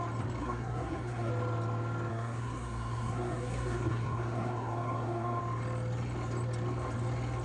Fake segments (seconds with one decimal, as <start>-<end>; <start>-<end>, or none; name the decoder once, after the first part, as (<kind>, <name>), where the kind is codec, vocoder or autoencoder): 0.4-1.3 (codec, SNAC); 2.1-5.4